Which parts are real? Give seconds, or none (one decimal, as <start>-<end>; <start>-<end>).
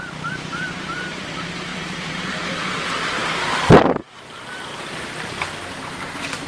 0.0-1.7; 2.2-4.7; 5.4-6.5